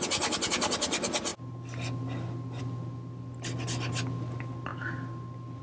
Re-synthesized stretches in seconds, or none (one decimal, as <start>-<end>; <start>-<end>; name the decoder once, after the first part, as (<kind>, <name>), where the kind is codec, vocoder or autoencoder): none